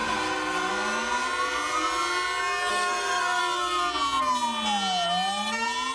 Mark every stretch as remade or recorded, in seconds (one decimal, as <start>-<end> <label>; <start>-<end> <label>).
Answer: 0.0-0.7 remade; 0.7-2.7 recorded; 2.7-3.4 remade; 3.4-5.9 recorded